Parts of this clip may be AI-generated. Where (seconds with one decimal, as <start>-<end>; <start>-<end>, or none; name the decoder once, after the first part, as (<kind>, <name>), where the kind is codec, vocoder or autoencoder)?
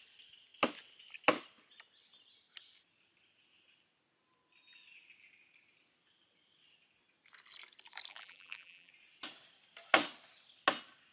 8.1-8.9 (vocoder, BigVGAN v2)